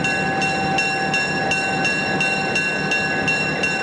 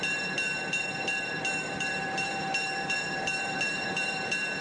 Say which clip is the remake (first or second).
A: second